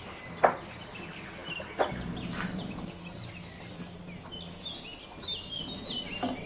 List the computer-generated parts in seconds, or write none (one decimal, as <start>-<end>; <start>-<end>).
none